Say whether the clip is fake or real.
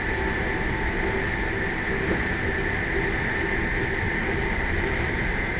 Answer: real